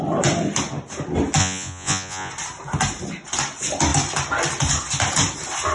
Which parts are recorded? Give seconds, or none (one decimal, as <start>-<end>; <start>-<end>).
0.0-1.4; 2.3-5.7